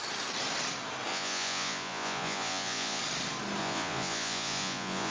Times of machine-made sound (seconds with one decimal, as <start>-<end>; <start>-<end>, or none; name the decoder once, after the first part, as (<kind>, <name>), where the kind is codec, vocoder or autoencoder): 1.1-3.0 (vocoder, Vocos); 3.6-5.1